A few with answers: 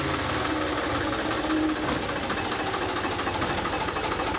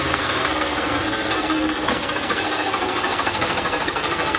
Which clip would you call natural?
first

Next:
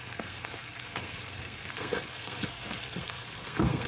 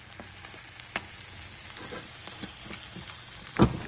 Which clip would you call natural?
second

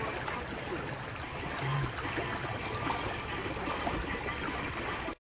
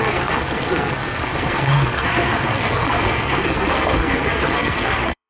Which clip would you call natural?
first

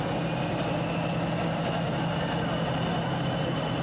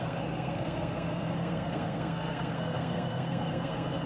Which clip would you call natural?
first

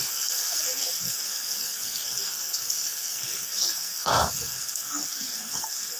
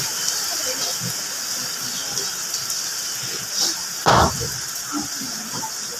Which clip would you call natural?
second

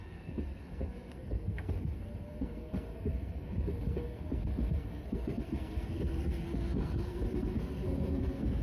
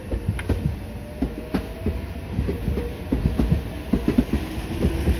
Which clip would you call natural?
second